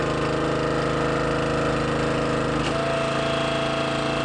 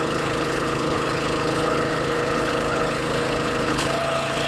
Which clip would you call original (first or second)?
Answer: first